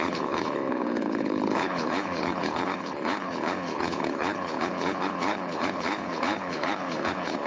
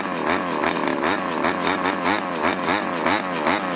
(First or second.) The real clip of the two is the second